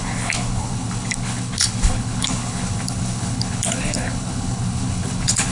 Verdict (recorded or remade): remade